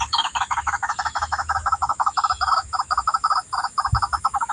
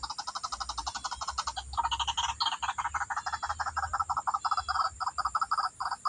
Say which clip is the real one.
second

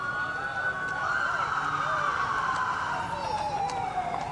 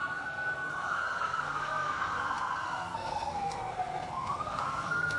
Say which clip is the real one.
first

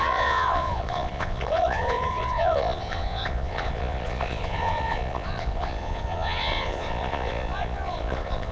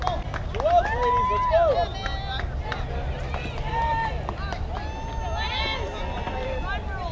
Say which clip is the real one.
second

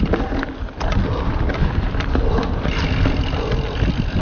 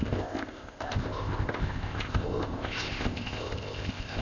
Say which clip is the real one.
first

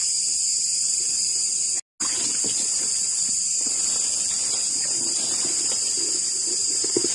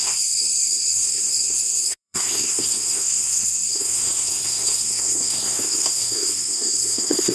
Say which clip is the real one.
first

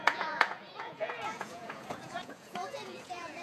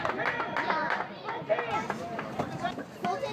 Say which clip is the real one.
second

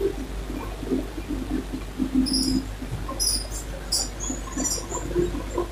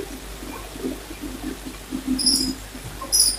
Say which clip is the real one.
first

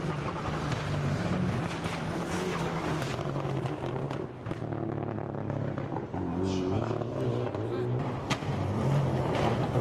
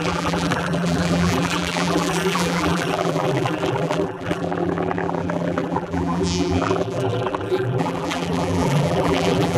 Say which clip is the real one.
first